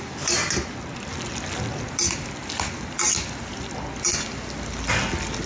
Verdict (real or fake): real